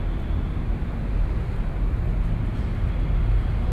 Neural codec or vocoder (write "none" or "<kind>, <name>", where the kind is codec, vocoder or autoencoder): none